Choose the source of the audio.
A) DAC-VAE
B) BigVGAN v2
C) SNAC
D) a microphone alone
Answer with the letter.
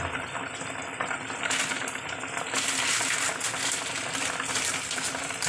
D